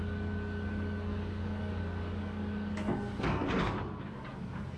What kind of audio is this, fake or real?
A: fake